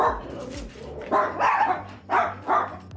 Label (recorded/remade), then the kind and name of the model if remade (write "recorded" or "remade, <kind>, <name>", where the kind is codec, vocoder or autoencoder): recorded